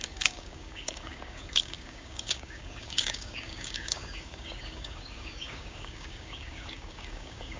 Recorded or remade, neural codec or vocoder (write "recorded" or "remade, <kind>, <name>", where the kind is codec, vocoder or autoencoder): remade, codec, DAC